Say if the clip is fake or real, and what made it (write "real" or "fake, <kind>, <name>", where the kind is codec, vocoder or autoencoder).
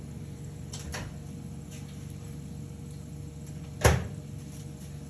real